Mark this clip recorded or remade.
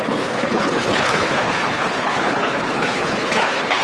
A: remade